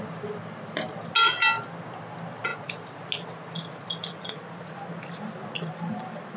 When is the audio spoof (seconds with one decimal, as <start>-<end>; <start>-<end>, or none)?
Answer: none